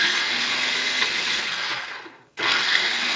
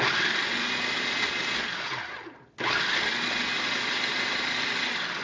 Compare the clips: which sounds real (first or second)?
second